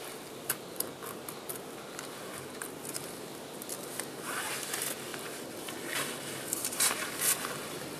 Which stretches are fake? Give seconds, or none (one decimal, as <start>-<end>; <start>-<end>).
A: none